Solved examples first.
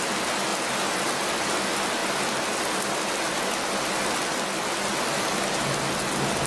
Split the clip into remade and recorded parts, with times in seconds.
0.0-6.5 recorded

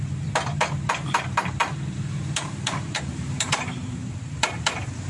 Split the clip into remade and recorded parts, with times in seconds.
0.0-5.1 remade

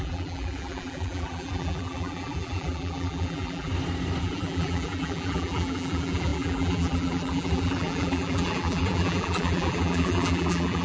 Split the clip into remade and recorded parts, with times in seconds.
0.0-3.7 remade; 3.7-4.2 recorded; 4.2-10.8 remade

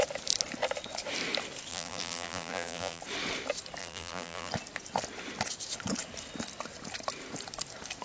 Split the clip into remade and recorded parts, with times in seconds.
0.0-1.7 recorded; 1.7-3.0 remade; 3.0-3.8 recorded; 3.8-4.5 remade; 4.5-8.0 recorded

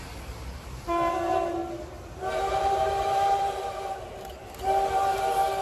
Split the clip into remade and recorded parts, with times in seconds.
0.0-1.6 remade; 1.6-2.3 recorded; 2.3-5.6 remade

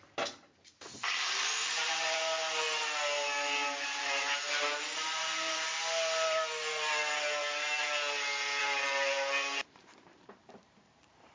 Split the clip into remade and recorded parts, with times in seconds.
0.0-8.0 remade; 8.0-8.6 recorded; 8.6-11.3 remade